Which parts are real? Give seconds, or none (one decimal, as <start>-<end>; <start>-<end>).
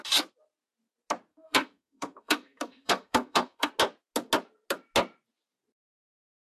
0.0-1.3; 3.7-6.6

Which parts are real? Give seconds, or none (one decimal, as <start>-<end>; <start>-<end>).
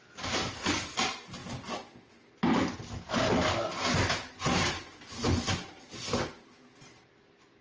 0.0-7.6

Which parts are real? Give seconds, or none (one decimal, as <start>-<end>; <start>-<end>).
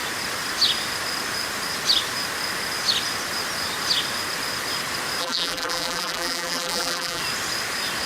0.0-5.2; 7.2-8.1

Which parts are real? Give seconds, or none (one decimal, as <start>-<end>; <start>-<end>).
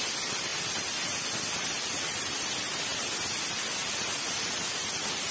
0.0-5.3